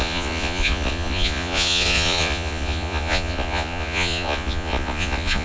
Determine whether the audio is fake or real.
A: fake